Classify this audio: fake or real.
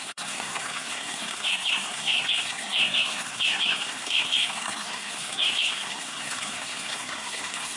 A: fake